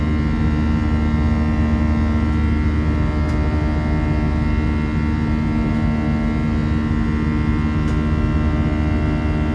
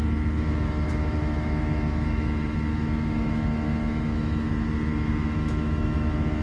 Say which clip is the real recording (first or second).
first